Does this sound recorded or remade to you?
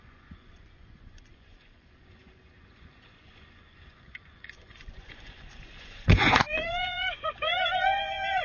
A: remade